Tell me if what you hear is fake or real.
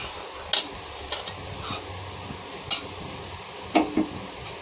real